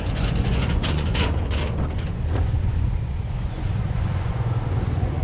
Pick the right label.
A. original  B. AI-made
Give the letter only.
B